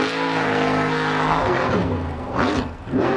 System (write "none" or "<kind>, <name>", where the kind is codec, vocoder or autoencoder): codec, SNAC